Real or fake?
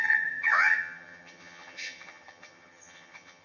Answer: fake